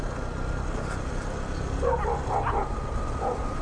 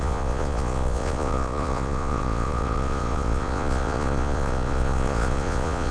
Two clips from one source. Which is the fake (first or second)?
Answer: second